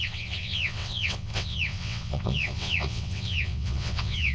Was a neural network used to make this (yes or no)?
yes